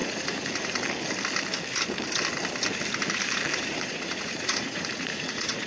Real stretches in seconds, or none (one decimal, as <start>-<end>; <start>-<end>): 0.8-3.5